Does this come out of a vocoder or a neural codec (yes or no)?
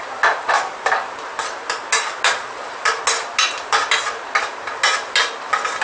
no